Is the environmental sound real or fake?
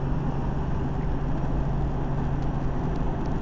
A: real